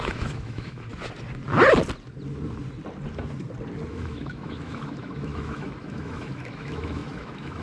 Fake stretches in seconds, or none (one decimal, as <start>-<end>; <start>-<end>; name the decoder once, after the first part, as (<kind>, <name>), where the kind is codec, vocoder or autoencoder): 0.0-0.9 (autoencoder, DAC-VAE); 3.9-7.6